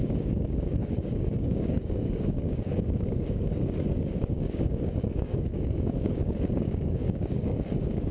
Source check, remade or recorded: remade